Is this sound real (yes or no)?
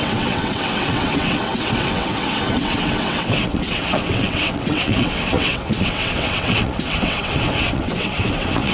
no